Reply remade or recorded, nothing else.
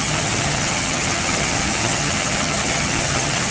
remade